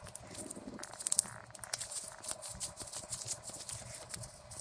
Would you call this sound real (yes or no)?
yes